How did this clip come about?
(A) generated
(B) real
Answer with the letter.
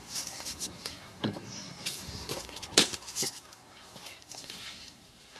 A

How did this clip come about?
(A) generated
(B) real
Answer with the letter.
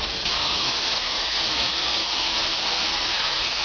A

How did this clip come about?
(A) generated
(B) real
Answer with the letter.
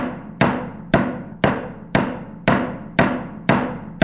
B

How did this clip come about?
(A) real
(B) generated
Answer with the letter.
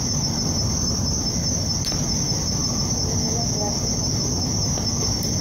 A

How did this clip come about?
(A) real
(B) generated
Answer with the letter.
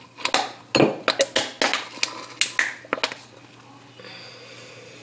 A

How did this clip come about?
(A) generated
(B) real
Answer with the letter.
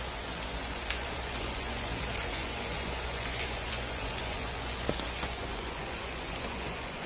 A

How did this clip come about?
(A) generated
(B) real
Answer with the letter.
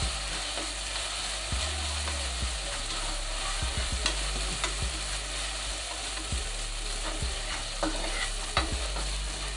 B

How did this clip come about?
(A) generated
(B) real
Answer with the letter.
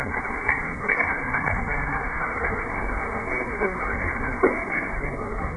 A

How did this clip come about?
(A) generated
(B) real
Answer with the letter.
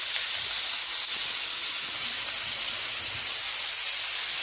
B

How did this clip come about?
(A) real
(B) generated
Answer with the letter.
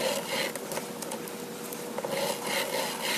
A